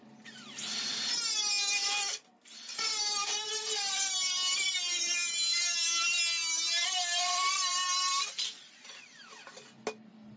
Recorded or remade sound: recorded